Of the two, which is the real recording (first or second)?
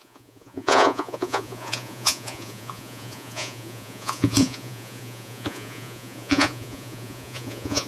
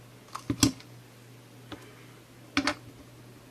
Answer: second